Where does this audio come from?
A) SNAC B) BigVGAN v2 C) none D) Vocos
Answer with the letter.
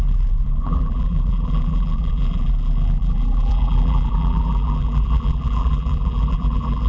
B